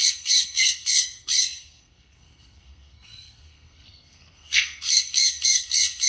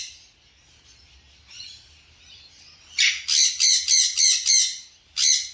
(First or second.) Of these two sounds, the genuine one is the second